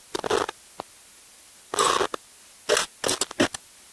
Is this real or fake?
real